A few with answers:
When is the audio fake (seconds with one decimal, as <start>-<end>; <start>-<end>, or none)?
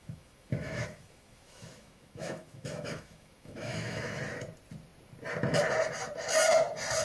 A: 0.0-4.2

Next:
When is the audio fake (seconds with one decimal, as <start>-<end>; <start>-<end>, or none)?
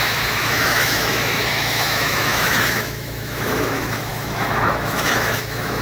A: 0.0-5.8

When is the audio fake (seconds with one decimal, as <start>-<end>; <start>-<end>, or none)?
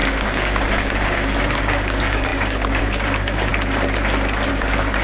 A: 0.0-3.5; 4.5-5.0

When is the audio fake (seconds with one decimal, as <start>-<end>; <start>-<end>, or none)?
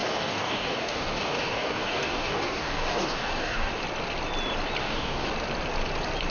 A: 0.0-3.7; 4.8-5.3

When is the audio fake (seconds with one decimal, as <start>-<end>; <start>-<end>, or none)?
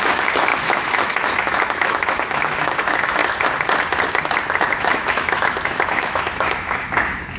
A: 0.0-3.2; 4.7-7.4